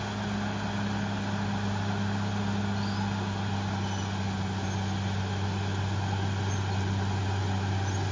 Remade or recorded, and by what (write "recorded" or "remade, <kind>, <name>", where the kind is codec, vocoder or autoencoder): recorded